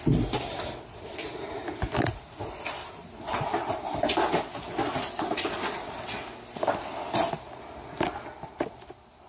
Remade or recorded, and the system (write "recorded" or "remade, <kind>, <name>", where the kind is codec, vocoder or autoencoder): recorded